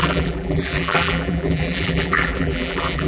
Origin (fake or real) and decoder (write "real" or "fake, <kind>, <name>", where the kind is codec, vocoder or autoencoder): fake, vocoder, BigVGAN v2